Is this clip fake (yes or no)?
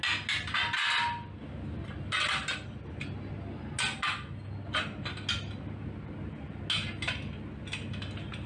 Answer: no